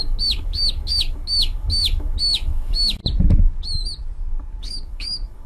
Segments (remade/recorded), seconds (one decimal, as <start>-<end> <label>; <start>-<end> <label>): 0.0-3.0 remade; 3.0-4.6 recorded; 4.6-5.5 remade